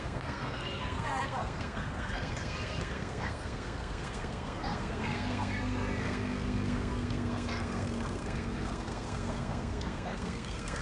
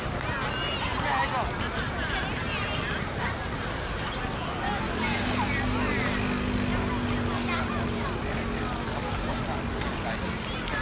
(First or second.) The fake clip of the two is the first